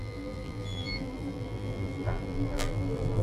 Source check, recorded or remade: remade